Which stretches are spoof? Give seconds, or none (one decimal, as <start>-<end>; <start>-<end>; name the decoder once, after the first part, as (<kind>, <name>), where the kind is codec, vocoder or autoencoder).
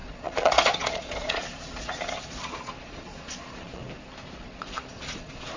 0.0-3.8 (vocoder, Vocos); 4.4-5.6